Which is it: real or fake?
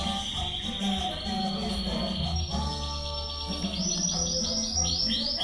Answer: real